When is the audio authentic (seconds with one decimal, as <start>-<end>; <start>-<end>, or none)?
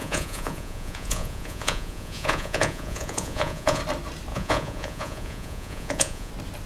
3.8-4.3; 6.3-6.7